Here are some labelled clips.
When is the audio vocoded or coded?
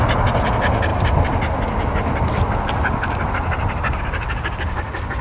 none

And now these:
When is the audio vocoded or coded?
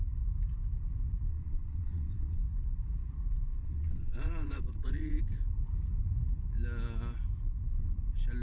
1.3-2.4 (vocoder, WaveNeXt); 3.6-5.2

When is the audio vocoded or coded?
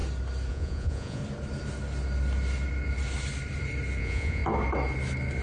0.5-1.2 (vocoder, Vocos); 4.0-4.4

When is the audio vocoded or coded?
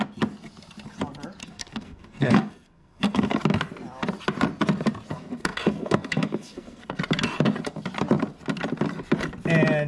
1.4-3.4 (codec, SNAC); 5.1-7.0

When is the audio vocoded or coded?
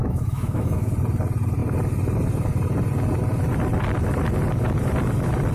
0.0-0.9 (autoencoder, DAC-VAE)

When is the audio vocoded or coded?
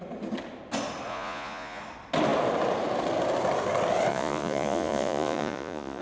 1.1-1.8 (vocoder, Vocos); 4.1-6.0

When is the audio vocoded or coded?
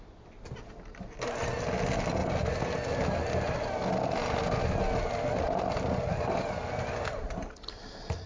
none